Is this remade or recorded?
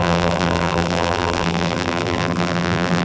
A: remade